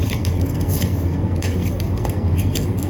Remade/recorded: remade